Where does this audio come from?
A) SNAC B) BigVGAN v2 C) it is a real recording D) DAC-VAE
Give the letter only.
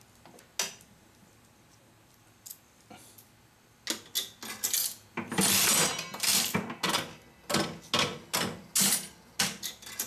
C